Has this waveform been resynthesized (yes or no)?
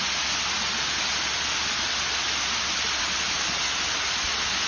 no